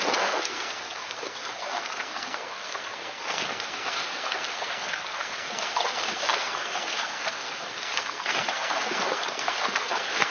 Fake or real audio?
fake